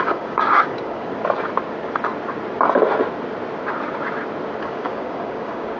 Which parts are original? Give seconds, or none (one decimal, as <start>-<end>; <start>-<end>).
1.1-4.6